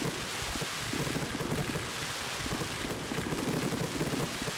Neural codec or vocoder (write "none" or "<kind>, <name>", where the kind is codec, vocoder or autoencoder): vocoder, BigVGAN v2